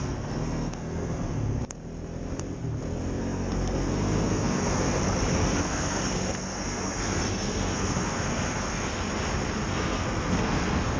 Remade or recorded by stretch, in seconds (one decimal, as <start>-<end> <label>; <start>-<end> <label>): 0.0-1.6 remade; 1.6-3.2 recorded; 3.2-5.0 remade; 5.0-5.6 recorded; 5.6-8.9 remade; 8.9-9.7 recorded; 9.7-11.0 remade